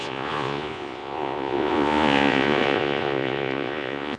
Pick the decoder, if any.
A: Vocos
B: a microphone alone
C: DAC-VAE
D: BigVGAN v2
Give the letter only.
A